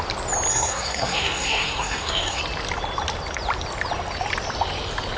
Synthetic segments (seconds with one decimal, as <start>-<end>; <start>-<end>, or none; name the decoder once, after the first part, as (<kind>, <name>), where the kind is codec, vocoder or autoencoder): 0.5-2.4 (codec, SNAC)